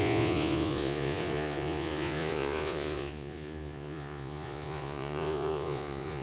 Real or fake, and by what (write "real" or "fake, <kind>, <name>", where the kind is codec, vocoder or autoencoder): fake, vocoder, Vocos